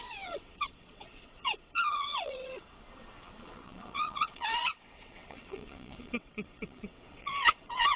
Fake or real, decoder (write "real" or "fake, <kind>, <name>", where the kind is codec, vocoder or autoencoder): fake, vocoder, WaveNeXt